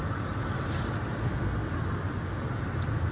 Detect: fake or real real